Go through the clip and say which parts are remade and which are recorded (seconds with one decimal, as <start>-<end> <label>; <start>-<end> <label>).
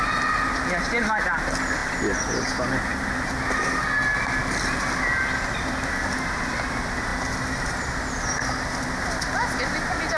0.0-10.2 recorded